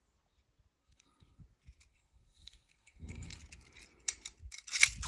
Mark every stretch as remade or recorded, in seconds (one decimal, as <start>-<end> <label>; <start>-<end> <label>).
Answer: 0.0-0.8 recorded; 0.8-1.4 remade; 1.4-1.9 recorded; 1.9-3.4 remade; 3.4-5.1 recorded